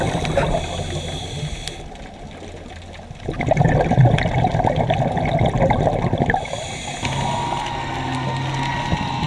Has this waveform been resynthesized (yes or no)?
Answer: no